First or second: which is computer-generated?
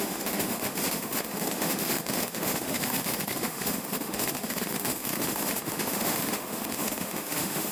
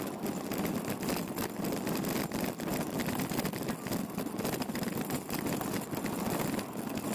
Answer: first